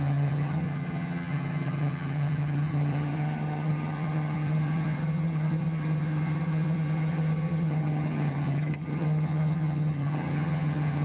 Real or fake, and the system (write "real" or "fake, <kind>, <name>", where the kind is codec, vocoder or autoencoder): fake, vocoder, HiFi-GAN